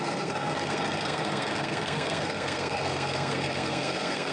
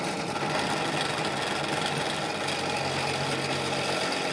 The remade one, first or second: first